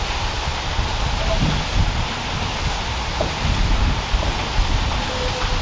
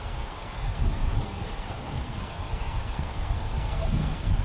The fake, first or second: second